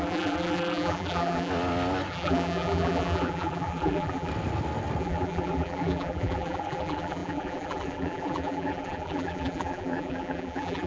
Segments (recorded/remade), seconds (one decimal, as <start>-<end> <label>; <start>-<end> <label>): 0.0-1.5 remade; 1.5-2.1 recorded; 2.1-4.3 remade; 4.3-5.0 recorded; 5.0-10.9 remade